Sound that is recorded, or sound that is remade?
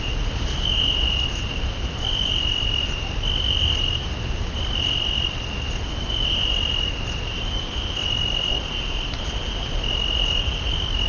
recorded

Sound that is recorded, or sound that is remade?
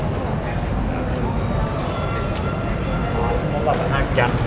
recorded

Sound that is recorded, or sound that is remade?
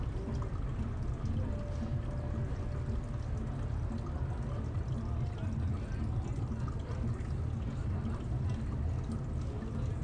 recorded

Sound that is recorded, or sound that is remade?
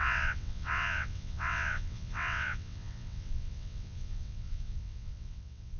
remade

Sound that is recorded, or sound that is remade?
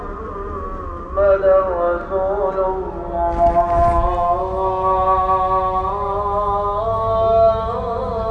recorded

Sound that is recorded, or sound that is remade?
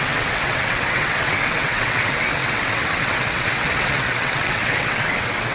remade